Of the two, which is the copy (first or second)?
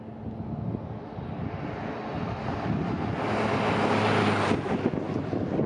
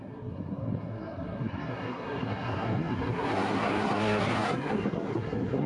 second